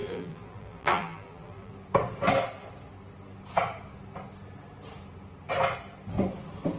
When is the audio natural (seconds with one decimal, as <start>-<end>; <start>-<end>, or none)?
1.7-6.8